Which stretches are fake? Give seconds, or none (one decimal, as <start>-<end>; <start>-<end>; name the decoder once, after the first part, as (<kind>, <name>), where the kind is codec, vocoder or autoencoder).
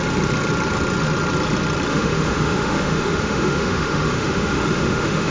1.9-5.3 (autoencoder, DAC-VAE)